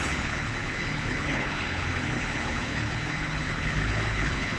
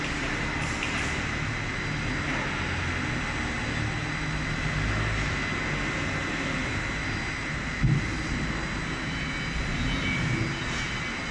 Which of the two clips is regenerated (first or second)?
first